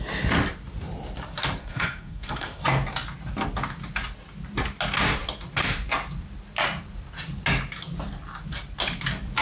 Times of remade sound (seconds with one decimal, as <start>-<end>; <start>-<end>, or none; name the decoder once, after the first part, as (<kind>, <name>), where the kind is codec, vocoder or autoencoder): 1.6-2.6 (codec, SNAC)